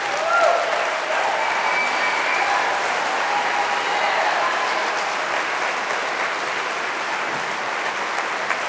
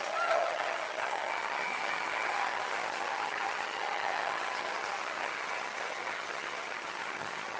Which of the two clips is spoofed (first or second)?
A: second